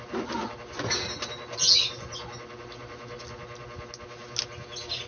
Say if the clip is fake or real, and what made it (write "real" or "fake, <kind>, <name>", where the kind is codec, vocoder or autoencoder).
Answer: real